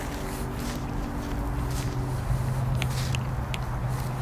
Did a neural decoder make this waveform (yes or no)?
no